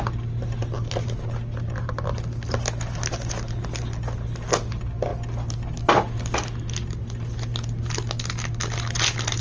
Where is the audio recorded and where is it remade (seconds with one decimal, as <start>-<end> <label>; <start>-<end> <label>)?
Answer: 0.0-9.4 recorded